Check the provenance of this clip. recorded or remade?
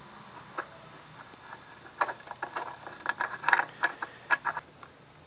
recorded